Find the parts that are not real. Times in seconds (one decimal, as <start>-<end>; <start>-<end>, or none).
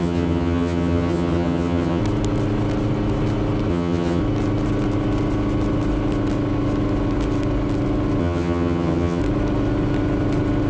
0.0-2.0; 3.7-4.2; 8.2-9.2